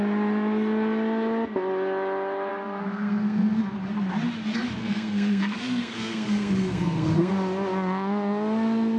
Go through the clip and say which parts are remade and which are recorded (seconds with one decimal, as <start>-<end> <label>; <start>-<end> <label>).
0.0-2.5 recorded; 2.5-3.6 remade; 3.6-4.8 recorded; 4.8-7.3 remade; 7.3-9.0 recorded